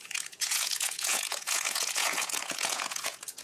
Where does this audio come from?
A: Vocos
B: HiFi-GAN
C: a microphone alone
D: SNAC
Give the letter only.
A